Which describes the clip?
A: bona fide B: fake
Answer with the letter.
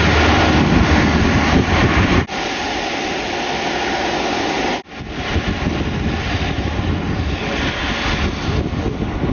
A